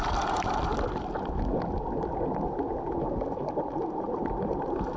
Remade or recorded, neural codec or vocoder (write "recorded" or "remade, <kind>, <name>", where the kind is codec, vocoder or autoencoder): recorded